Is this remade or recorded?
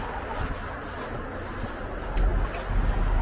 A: recorded